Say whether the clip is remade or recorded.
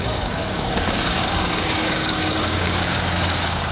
remade